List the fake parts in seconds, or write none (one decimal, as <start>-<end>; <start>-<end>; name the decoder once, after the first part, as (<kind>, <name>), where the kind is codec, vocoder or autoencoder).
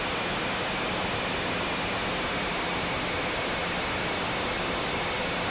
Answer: none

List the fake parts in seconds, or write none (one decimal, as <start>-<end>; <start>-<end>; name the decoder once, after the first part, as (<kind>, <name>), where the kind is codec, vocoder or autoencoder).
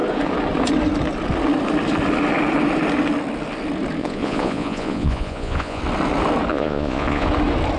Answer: 4.0-5.8 (vocoder, Vocos); 6.5-7.3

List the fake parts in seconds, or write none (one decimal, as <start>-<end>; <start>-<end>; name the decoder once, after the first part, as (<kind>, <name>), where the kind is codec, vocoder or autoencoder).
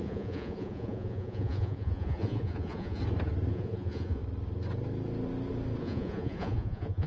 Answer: 0.0-3.0 (vocoder, Vocos); 3.5-4.2; 5.8-7.1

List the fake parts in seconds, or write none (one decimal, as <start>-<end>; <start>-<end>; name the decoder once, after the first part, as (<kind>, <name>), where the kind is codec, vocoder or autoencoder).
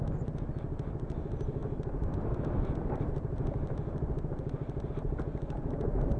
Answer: none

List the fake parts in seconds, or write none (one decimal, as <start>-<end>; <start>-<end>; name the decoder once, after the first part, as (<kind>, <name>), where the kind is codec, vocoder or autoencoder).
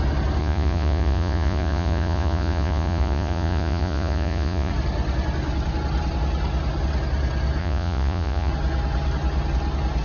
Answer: 0.4-4.7 (vocoder, Vocos); 7.6-8.5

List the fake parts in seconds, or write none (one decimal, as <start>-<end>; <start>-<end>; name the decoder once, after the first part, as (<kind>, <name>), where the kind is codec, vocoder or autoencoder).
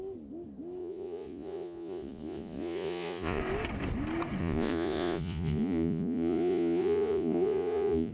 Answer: 0.8-3.4 (vocoder, Vocos); 4.4-8.1